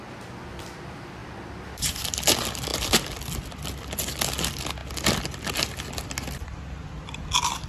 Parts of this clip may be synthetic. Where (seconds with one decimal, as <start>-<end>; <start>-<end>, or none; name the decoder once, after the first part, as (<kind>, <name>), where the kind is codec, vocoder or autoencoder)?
none